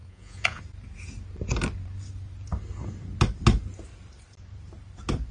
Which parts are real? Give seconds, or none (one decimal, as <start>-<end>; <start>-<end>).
0.6-5.3